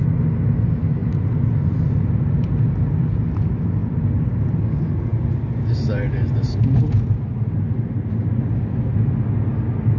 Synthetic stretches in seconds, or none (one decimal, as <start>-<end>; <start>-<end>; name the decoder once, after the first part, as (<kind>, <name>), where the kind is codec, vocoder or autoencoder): none